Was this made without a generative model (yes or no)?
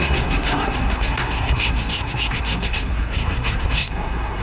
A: no